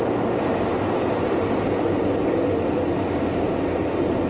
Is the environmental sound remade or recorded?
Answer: recorded